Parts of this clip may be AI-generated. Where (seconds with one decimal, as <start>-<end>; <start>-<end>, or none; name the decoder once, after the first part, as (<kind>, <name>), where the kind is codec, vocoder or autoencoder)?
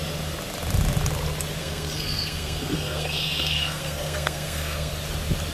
1.6-4.9 (codec, SNAC)